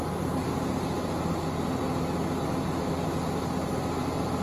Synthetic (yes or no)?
no